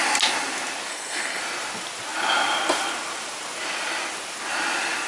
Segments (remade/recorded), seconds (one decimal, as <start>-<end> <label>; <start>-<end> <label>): 0.0-0.9 recorded; 0.9-1.4 remade; 1.4-5.1 recorded